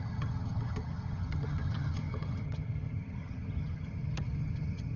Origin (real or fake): fake